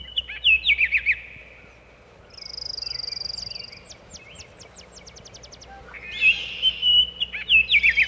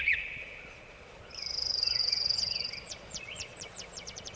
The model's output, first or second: second